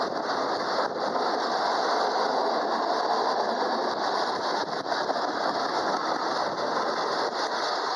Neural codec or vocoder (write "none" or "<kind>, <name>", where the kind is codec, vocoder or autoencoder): none